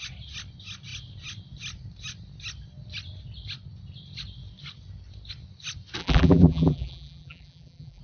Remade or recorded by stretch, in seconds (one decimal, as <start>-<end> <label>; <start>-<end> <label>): 0.0-6.0 recorded; 6.0-8.0 remade